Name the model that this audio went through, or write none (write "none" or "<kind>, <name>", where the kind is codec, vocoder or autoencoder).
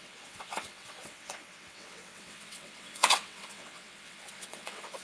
vocoder, WaveNeXt